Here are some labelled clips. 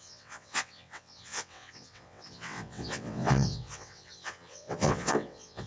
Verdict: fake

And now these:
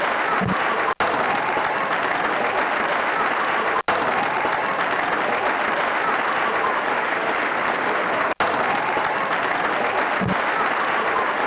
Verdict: real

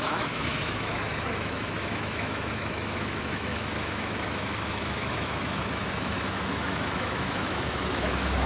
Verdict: fake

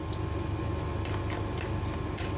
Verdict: real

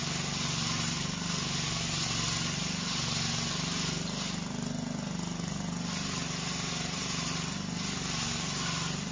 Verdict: real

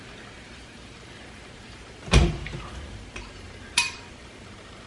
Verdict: fake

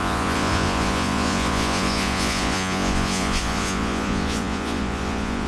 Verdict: fake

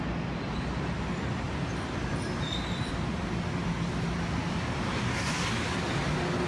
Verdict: real